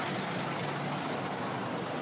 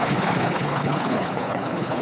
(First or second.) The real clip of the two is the first